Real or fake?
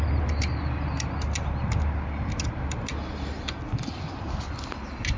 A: real